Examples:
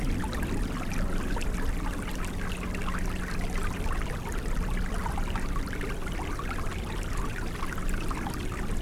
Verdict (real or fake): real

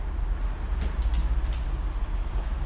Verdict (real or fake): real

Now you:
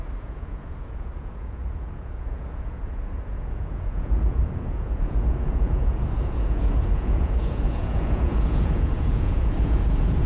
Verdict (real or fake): fake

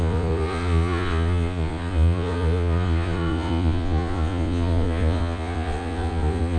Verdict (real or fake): fake